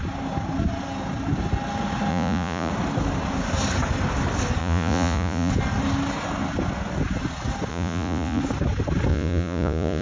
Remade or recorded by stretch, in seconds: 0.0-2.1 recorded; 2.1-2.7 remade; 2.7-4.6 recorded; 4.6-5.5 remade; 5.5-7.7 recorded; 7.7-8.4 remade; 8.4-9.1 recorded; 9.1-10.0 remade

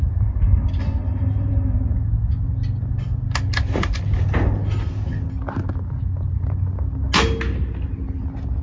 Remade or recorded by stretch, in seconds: 0.0-8.6 recorded